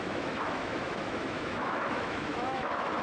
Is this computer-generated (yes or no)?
yes